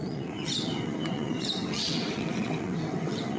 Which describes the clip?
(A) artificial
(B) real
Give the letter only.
A